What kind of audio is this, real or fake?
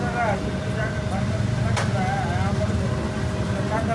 real